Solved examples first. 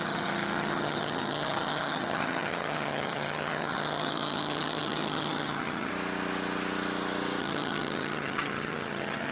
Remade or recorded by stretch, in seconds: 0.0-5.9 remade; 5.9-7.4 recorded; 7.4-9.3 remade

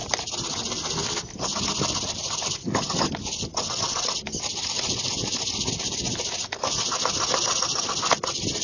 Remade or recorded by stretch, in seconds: 0.0-2.6 recorded; 2.6-3.1 remade; 3.1-8.6 recorded

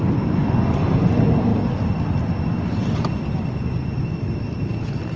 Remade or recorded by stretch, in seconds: 0.0-5.2 recorded

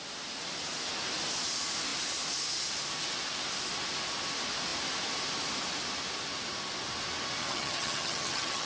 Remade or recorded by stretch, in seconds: 0.0-7.4 recorded; 7.4-8.7 remade

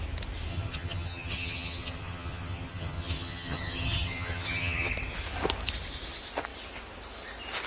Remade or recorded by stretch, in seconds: 0.0-0.5 recorded; 0.5-4.9 remade; 4.9-7.7 recorded